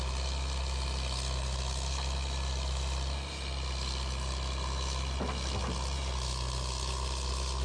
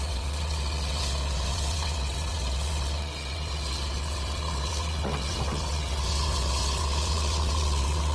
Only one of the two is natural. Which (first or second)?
first